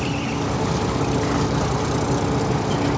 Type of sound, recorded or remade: recorded